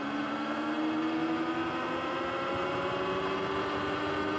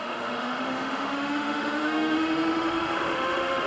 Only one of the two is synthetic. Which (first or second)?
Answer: second